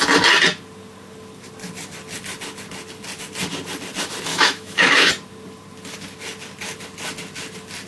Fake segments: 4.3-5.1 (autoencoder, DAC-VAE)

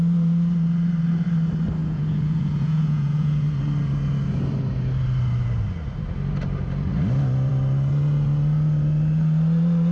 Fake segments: 1.8-3.4 (vocoder, Vocos)

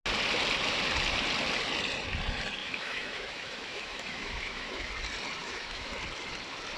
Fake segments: 2.6-4.9 (autoencoder, DAC-VAE); 5.4-5.9

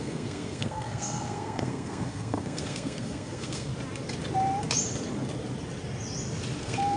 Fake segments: 0.0-3.7 (codec, SNAC); 6.6-7.0

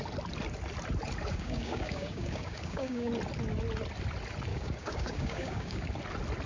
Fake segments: 1.3-3.1 (codec, DAC); 4.5-5.9

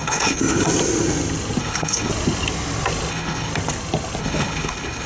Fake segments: 0.0-0.4 (codec, HILCodec); 1.6-2.1; 3.1-3.5; 4.2-5.1

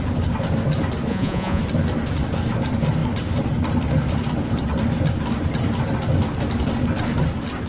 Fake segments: 1.1-1.6 (vocoder, Vocos)